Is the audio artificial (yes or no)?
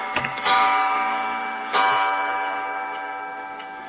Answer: yes